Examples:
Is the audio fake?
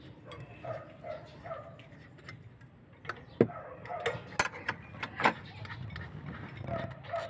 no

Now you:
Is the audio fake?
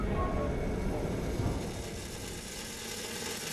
no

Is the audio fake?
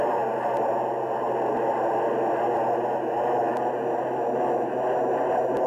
no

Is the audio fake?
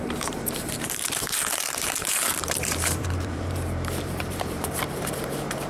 yes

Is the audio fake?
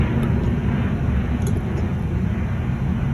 no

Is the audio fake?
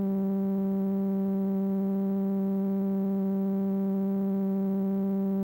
no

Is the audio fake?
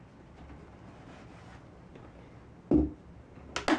no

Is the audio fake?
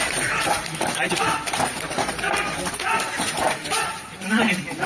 yes